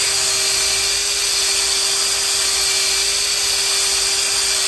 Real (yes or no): yes